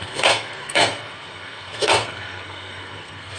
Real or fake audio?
fake